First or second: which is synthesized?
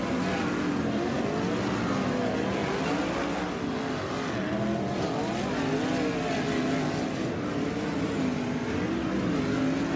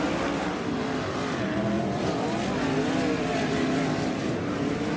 second